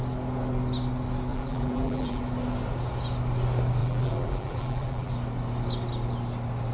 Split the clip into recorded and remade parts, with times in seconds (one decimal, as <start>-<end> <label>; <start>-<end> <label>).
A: 0.0-1.3 recorded; 1.3-2.2 remade; 2.2-3.8 recorded; 3.8-5.1 remade; 5.1-6.7 recorded